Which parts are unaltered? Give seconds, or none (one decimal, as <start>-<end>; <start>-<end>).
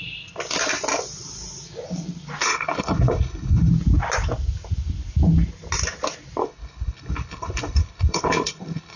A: 0.0-2.4; 3.7-6.4